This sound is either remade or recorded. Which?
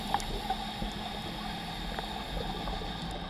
recorded